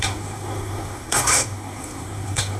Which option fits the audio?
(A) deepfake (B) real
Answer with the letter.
A